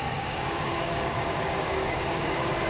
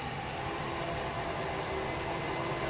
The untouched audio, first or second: second